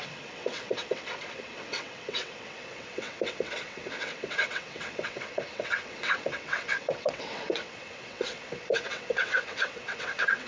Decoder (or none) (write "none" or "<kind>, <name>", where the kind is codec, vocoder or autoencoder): vocoder, WaveNeXt